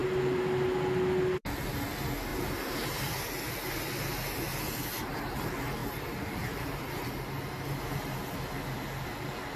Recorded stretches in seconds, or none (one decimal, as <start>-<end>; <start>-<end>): 0.0-2.3; 3.1-5.8; 8.3-9.6